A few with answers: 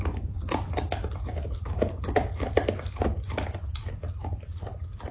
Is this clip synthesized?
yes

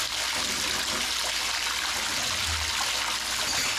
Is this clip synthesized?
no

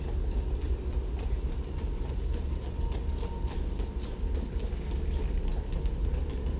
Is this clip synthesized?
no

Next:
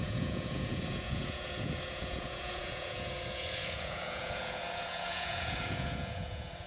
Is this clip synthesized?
yes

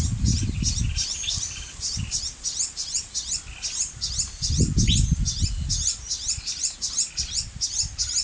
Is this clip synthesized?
no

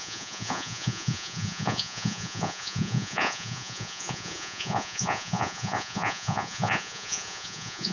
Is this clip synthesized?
yes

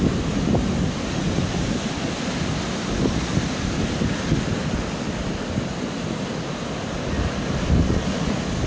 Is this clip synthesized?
no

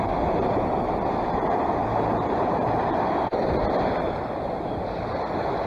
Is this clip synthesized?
no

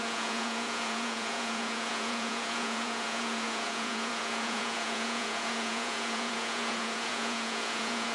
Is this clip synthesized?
yes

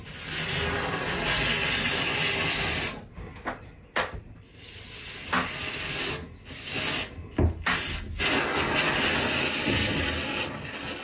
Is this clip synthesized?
no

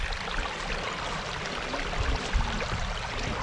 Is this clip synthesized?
no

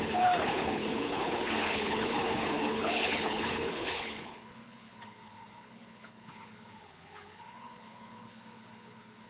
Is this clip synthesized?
yes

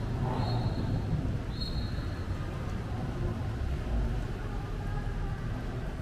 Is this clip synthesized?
no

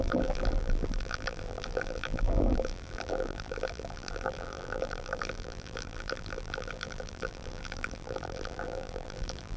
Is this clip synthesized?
yes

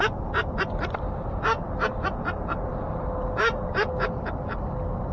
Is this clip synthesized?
no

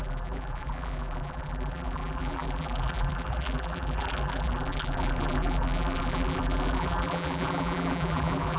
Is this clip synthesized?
yes